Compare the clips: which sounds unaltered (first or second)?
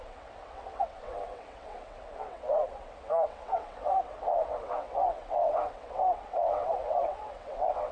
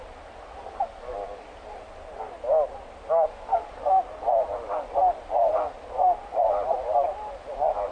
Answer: second